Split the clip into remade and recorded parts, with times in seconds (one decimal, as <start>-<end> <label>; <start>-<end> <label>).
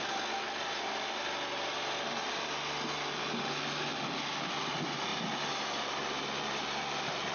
0.0-7.3 recorded